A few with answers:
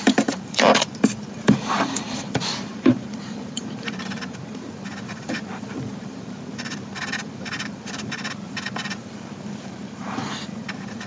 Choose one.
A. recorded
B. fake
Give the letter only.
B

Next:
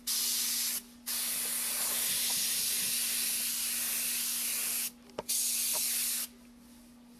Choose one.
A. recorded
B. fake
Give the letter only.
A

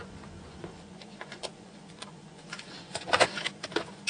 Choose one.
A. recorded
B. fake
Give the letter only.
B